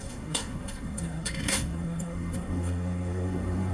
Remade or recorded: remade